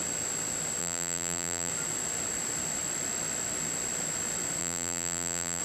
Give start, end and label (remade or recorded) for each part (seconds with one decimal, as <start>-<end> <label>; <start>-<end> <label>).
0.0-0.8 recorded; 0.8-1.7 remade; 1.7-4.6 recorded; 4.6-5.6 remade

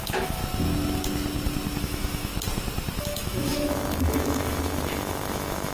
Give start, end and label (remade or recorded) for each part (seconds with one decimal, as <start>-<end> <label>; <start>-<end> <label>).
0.0-0.4 remade; 0.4-1.8 recorded; 1.8-2.3 remade; 2.3-3.0 recorded; 3.0-5.7 remade

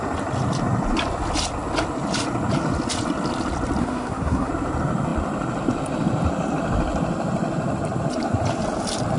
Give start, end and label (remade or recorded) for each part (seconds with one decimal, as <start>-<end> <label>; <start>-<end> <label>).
0.0-3.8 recorded; 3.8-4.5 remade; 4.5-9.2 recorded

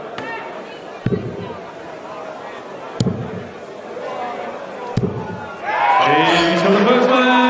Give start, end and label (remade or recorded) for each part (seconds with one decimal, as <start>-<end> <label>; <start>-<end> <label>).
0.0-6.5 recorded; 6.5-7.5 remade

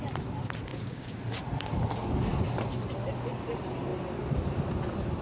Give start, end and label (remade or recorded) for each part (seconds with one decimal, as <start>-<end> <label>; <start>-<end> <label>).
0.0-0.7 recorded; 0.7-1.2 remade; 1.2-5.2 recorded

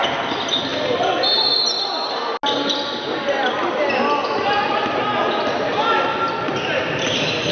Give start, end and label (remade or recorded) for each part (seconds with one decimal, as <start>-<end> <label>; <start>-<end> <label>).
0.0-7.5 recorded

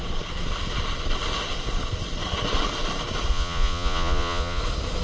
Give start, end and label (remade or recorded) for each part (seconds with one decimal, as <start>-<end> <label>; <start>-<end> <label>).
0.0-3.3 recorded; 3.3-4.6 remade; 4.6-5.0 recorded

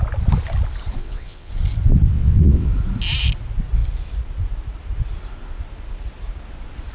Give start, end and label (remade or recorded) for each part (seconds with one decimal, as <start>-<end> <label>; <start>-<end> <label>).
0.0-1.0 recorded; 1.0-1.5 remade; 1.5-2.1 recorded; 2.1-2.7 remade; 2.7-6.9 recorded